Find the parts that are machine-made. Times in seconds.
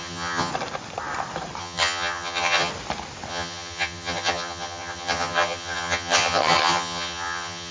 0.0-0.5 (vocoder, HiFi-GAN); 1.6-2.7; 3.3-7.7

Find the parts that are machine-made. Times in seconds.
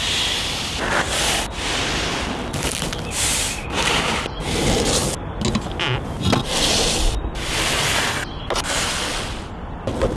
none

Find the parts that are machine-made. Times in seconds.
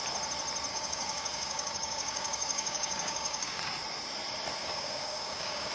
0.7-3.6 (codec, DAC); 4.6-5.7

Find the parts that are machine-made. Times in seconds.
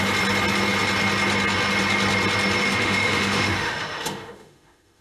2.6-5.0 (autoencoder, DAC-VAE)